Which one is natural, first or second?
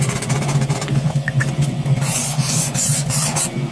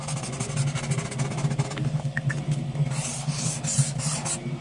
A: second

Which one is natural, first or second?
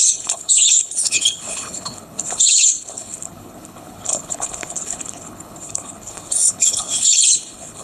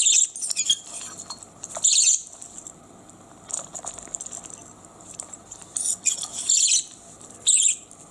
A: second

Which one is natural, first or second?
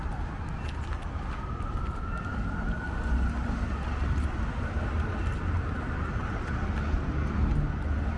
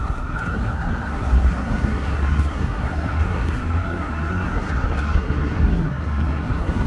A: first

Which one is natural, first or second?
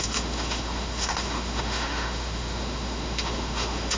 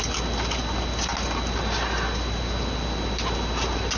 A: second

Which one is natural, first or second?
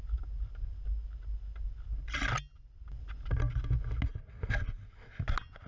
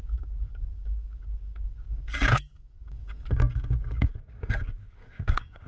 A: first